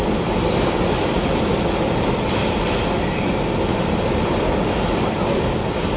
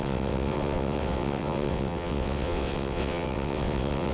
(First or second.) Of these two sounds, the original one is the first